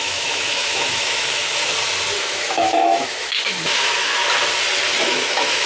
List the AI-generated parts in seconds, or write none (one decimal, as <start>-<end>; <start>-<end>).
0.0-1.6; 2.2-4.2; 5.0-5.7